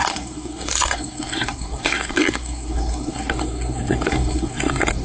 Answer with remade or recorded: remade